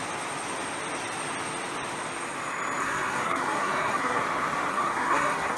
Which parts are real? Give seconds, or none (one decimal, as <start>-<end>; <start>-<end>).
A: 0.0-2.8; 4.2-4.7